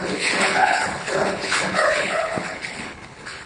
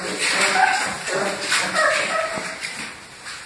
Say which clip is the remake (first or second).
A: first